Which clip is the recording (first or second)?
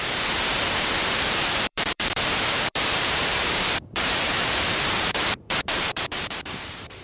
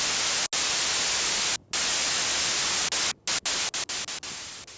second